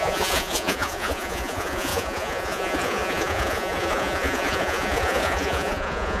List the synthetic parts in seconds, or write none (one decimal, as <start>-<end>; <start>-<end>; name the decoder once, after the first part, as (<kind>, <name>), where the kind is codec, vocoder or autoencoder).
0.0-6.2 (vocoder, Vocos)